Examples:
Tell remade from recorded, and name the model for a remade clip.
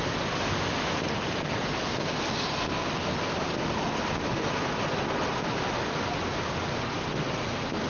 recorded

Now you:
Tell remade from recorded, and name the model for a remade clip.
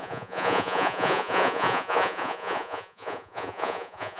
remade, vocoder, Vocos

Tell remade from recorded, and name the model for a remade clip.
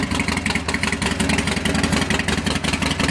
recorded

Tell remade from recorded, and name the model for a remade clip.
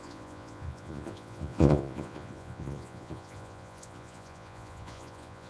remade, vocoder, Vocos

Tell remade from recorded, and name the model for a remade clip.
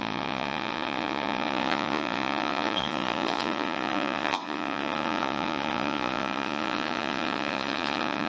remade, vocoder, Vocos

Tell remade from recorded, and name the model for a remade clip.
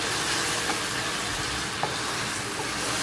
recorded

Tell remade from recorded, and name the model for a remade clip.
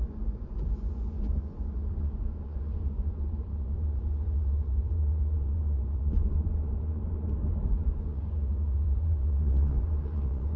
remade, vocoder, Vocos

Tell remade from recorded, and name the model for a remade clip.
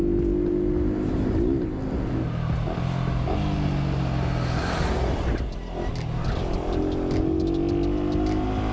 recorded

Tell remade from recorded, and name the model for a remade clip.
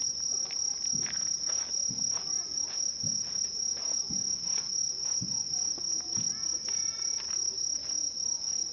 recorded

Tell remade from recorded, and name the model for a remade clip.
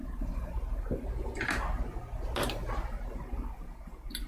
recorded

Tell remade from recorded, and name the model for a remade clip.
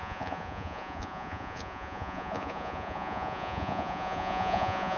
remade, vocoder, Vocos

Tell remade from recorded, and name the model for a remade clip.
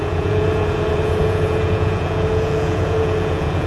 remade, vocoder, Vocos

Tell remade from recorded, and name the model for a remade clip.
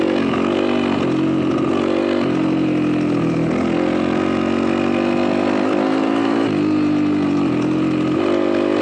recorded